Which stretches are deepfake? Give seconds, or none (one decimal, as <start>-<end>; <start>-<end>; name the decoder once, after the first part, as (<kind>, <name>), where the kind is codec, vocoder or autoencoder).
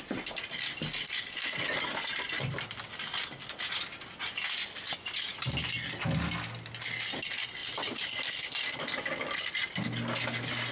none